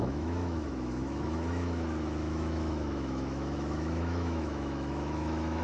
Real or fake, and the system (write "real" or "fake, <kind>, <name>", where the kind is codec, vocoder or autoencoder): fake, autoencoder, DAC-VAE